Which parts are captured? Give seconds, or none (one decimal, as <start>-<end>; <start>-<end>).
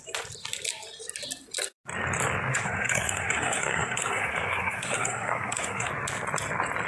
0.0-2.5; 5.9-6.9